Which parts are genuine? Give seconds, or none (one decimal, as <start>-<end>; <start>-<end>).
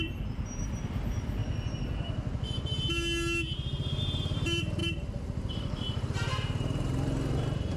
1.4-4.0